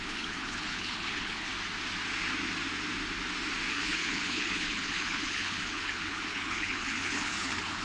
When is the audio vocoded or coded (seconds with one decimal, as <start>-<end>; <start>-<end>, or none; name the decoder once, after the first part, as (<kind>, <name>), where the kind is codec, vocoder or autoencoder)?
0.0-1.5 (codec, HILCodec); 3.7-7.8